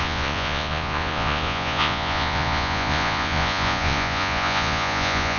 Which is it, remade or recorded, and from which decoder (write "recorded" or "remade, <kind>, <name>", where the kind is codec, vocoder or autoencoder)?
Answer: remade, vocoder, Vocos